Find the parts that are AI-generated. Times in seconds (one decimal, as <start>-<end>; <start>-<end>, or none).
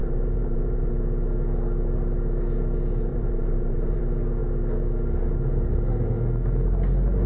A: 0.0-0.9; 3.1-4.0